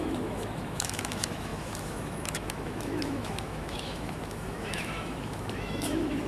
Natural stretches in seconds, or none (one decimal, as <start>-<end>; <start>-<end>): none

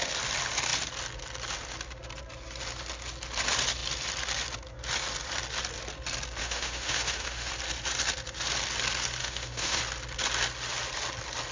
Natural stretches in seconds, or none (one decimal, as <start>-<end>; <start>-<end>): 0.0-6.4; 7.5-9.2; 9.8-11.5

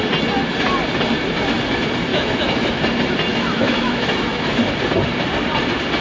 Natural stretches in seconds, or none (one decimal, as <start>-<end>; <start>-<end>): 0.0-2.1; 2.8-3.3; 4.6-6.0

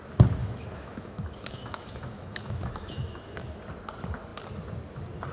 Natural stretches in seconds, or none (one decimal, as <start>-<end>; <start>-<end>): 0.0-0.4; 3.6-5.3

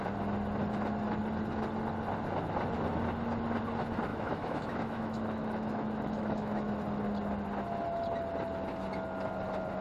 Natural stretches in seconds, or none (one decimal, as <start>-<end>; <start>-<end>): 0.0-4.1; 6.7-9.8

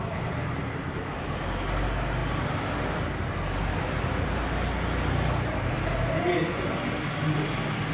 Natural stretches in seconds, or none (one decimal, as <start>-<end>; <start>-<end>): 0.0-7.9

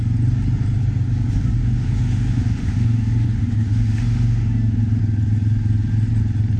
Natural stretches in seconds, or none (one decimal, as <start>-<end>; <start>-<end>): 0.0-1.6; 5.0-6.6